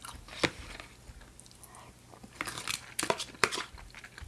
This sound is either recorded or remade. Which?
recorded